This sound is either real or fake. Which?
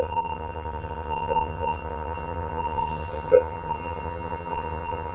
fake